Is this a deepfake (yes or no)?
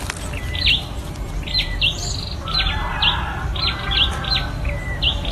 yes